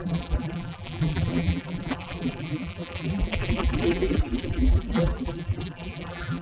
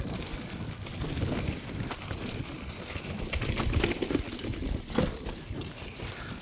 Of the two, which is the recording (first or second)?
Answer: second